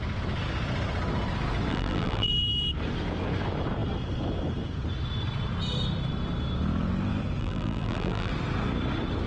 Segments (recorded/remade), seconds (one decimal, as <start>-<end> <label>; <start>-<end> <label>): 0.0-1.7 recorded; 1.7-2.3 remade; 2.3-7.4 recorded; 7.4-8.3 remade; 8.3-9.3 recorded